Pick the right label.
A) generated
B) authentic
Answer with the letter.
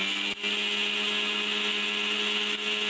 B